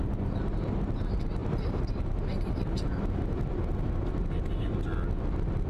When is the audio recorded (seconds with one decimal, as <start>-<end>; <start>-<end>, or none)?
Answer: 0.0-5.7